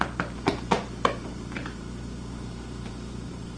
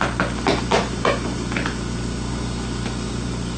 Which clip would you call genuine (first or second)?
second